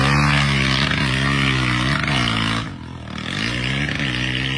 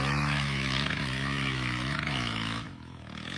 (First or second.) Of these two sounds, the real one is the first